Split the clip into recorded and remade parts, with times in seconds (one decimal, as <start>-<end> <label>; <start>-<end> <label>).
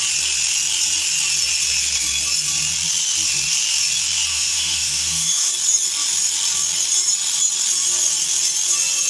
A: 0.0-4.3 recorded; 4.3-5.5 remade; 5.5-9.1 recorded